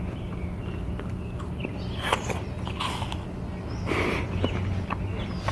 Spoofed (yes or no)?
no